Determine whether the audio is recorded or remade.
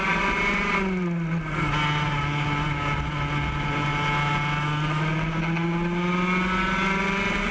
recorded